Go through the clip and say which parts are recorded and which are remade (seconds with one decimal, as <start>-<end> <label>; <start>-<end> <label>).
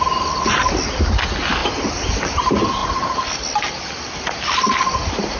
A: 0.0-5.4 recorded